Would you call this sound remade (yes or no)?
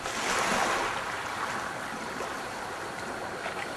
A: no